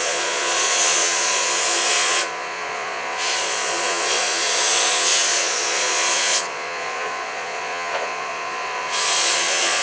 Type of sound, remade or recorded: remade